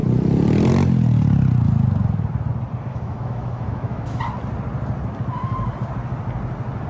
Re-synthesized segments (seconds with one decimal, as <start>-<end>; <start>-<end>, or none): 2.9-4.2